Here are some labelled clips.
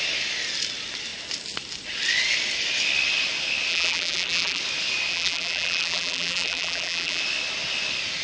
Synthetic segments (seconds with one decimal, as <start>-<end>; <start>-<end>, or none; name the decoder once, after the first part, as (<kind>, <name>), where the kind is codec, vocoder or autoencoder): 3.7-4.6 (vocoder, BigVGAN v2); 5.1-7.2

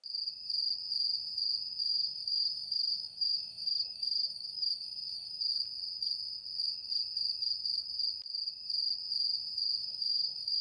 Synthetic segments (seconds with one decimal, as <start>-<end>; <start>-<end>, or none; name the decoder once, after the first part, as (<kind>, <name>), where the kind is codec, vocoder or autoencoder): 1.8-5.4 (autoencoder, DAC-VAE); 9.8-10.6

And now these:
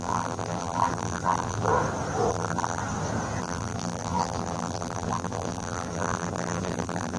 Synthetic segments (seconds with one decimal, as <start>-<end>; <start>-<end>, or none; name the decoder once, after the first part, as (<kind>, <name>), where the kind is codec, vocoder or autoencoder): 0.0-1.7 (vocoder, BigVGAN v2); 2.3-2.8; 3.4-7.2